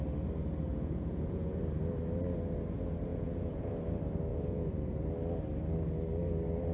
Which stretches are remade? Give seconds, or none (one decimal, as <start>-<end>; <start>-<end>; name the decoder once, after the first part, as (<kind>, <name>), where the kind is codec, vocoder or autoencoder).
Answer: 0.7-1.6 (vocoder, Vocos); 3.1-3.8; 4.3-5.0